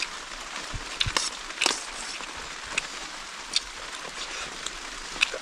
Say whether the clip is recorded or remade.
recorded